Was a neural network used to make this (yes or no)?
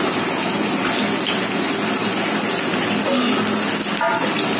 no